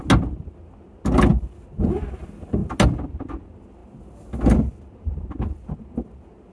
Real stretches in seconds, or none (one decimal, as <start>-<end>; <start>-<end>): 0.0-6.5

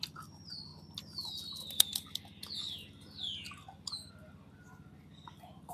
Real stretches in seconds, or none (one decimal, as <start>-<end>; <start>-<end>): 0.0-5.7

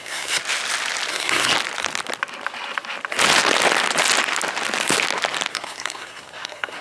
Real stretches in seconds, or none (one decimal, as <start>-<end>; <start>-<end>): 0.4-1.1; 1.5-5.5

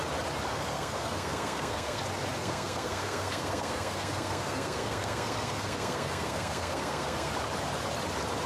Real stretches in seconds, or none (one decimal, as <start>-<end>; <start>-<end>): 0.0-0.5; 2.0-2.4; 7.3-8.5

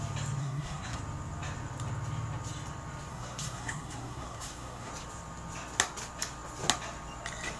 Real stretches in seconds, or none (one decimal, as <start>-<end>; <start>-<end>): 0.0-0.4; 1.0-3.1; 4.9-7.6

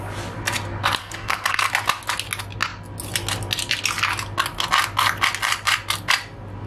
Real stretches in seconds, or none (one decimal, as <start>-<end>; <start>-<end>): 0.0-1.0; 1.7-6.7